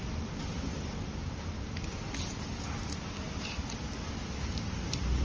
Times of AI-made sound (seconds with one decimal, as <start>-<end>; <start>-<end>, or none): none